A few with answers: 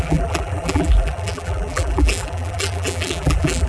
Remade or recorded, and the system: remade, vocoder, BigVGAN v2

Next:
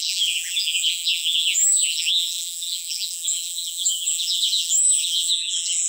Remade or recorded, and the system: remade, vocoder, BigVGAN v2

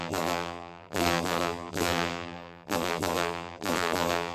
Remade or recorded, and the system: remade, vocoder, BigVGAN v2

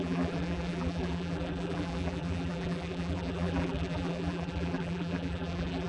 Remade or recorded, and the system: remade, vocoder, BigVGAN v2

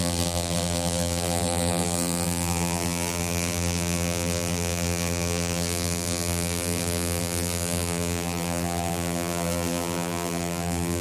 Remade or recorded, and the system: remade, vocoder, BigVGAN v2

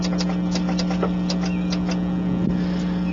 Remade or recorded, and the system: recorded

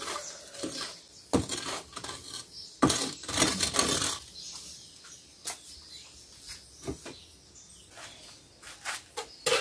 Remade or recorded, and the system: recorded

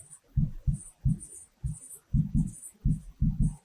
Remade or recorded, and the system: recorded